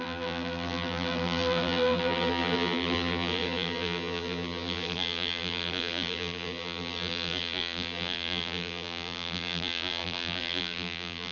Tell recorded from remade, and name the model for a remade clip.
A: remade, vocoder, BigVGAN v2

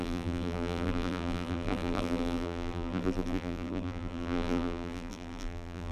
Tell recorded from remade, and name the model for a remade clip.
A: remade, vocoder, BigVGAN v2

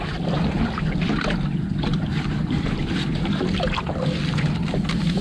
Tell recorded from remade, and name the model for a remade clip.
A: remade, vocoder, BigVGAN v2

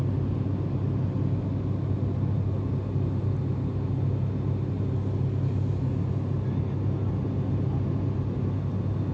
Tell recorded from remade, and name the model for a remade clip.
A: recorded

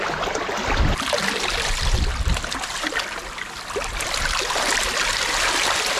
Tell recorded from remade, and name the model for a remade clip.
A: recorded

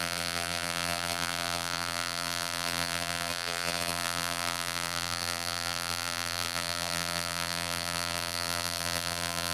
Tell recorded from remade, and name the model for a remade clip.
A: remade, vocoder, BigVGAN v2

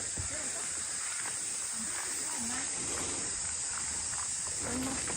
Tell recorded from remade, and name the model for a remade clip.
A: recorded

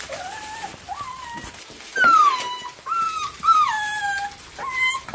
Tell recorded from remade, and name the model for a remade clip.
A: recorded